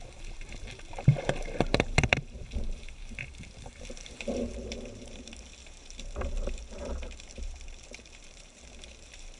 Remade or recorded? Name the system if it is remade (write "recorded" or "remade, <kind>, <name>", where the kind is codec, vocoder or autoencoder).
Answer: remade, vocoder, BigVGAN v2